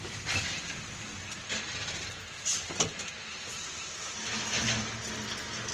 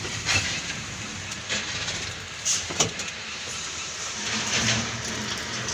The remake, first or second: second